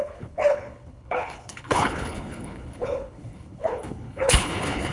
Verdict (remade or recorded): remade